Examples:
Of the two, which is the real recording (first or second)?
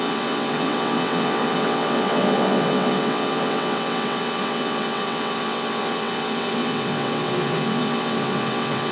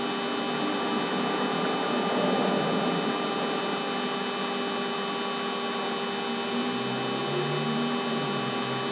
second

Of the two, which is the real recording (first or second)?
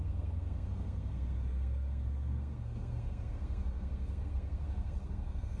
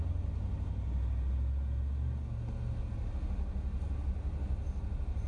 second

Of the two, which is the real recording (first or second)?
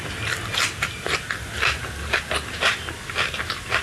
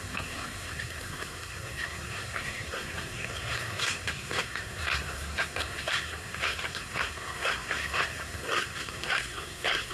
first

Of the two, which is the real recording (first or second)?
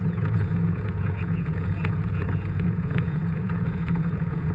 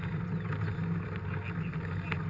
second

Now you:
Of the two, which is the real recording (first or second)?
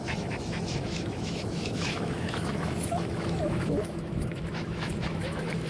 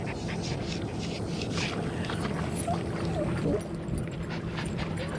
second